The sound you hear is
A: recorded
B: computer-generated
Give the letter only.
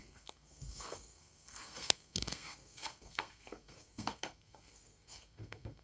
B